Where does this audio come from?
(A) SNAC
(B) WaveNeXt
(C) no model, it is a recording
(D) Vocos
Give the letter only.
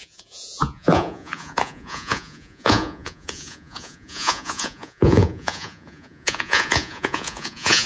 D